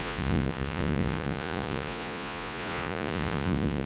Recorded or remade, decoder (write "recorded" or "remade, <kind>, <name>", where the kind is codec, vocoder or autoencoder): remade, vocoder, Vocos